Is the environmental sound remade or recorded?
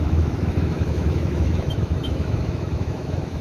remade